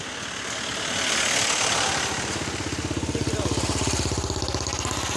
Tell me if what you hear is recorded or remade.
recorded